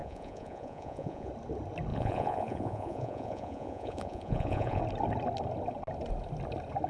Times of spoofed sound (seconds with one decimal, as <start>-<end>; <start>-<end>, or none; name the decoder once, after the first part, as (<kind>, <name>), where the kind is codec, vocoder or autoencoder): 0.0-1.3 (vocoder, Vocos); 1.9-4.8